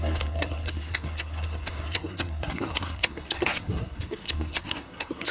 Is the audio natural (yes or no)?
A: no